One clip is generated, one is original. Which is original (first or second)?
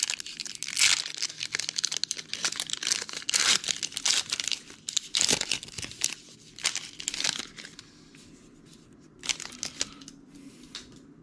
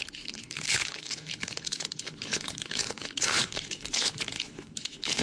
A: first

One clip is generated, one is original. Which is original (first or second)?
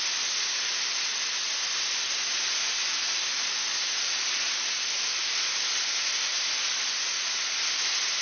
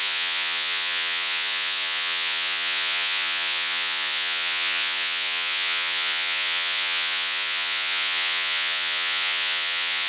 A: first